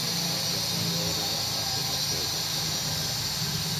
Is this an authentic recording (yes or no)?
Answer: yes